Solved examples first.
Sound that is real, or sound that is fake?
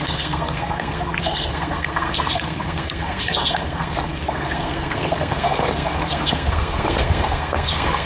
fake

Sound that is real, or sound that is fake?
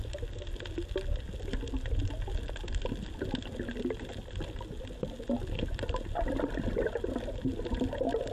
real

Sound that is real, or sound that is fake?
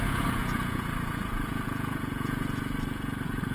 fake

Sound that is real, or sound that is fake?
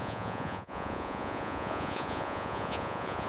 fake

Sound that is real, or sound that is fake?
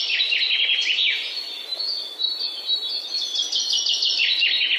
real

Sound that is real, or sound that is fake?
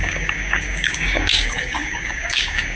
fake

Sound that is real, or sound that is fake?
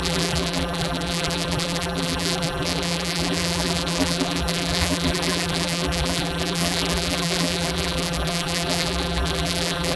fake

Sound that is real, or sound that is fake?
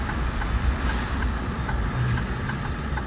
real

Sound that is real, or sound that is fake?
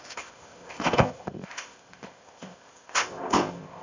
fake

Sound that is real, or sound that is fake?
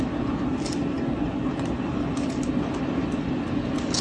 real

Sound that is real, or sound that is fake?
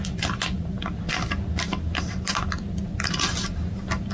real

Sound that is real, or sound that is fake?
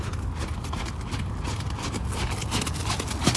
real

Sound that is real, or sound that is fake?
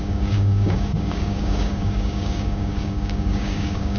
fake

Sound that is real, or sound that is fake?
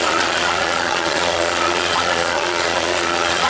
fake